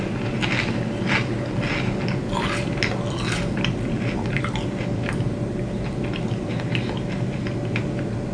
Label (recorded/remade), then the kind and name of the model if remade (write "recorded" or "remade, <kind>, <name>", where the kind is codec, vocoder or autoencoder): recorded